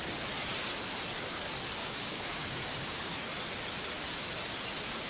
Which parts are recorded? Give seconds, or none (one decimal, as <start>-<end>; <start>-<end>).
0.0-1.8; 3.2-5.1